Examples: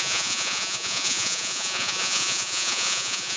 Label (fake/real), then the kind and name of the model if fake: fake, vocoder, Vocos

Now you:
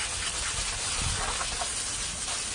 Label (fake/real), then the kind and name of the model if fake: real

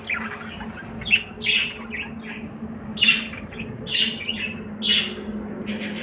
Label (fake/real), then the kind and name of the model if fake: real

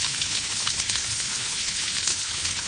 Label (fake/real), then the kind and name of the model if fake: fake, codec, HILCodec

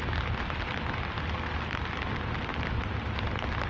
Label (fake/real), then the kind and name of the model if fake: real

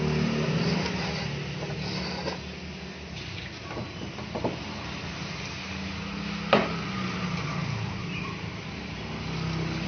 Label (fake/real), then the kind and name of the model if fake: real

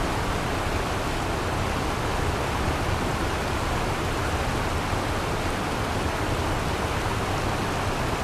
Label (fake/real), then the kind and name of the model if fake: real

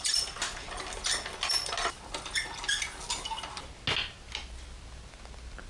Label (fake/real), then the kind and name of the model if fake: real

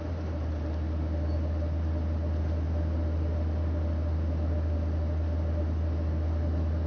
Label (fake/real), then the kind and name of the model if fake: real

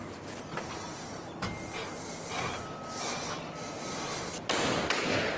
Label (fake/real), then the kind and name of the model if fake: real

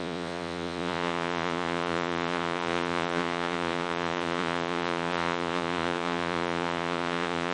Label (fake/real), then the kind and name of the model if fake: fake, vocoder, Vocos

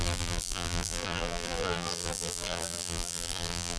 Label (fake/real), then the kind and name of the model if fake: fake, vocoder, BigVGAN v2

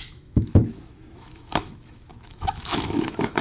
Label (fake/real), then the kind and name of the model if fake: fake, autoencoder, DAC-VAE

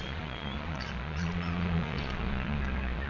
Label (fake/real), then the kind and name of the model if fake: fake, vocoder, Vocos